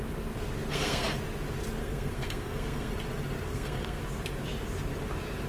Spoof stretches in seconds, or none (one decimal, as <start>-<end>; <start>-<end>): 0.7-1.2; 1.8-2.9; 3.5-4.0